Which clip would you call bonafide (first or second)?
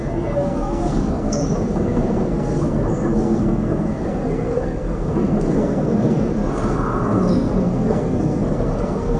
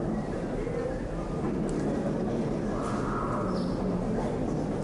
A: second